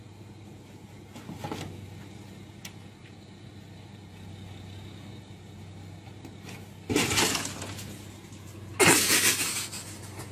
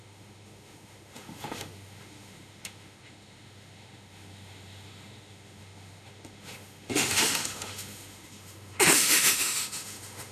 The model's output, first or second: second